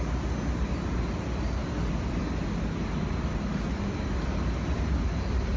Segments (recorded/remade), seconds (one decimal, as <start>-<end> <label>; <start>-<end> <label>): 0.0-5.6 recorded